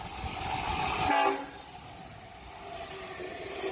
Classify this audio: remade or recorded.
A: recorded